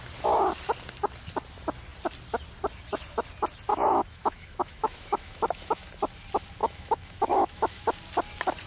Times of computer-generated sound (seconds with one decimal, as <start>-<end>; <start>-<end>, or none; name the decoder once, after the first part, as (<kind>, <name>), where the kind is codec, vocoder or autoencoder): 3.7-5.9 (autoencoder, DAC-VAE); 6.6-7.8